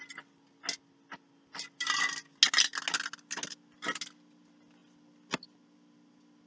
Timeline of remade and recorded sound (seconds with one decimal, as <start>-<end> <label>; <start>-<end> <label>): 0.0-6.5 recorded